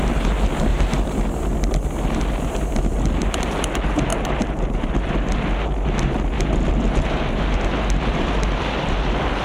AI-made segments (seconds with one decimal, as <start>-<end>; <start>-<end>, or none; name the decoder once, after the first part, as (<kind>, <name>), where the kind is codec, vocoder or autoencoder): 0.7-1.3 (vocoder, BigVGAN v2)